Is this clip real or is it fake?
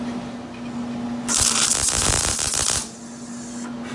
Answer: real